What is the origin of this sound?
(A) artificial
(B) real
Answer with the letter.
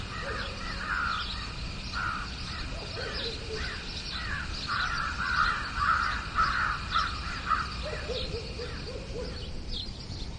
B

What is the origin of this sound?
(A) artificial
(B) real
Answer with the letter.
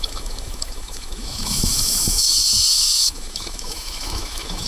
A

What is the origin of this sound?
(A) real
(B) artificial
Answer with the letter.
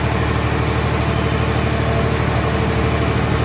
A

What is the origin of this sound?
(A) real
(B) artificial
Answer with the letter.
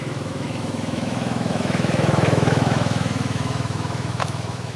B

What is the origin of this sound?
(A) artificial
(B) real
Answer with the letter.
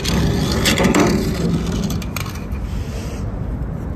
B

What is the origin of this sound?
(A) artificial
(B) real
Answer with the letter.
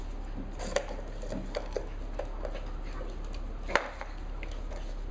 B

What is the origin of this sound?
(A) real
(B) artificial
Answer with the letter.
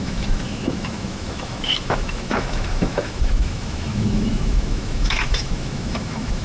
B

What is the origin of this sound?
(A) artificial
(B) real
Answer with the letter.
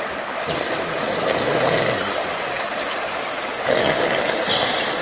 B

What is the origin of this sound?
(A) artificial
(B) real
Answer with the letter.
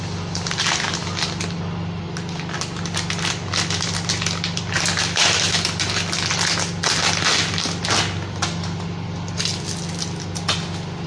B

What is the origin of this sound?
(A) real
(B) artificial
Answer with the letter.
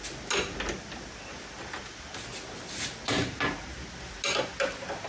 A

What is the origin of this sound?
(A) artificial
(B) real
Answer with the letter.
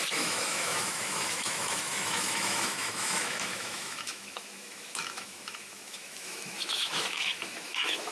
A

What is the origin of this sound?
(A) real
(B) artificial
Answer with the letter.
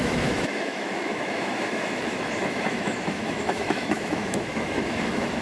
B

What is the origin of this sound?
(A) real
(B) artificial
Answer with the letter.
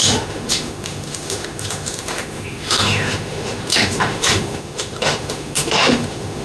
B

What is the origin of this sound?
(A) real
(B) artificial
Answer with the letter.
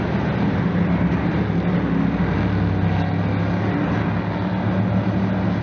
A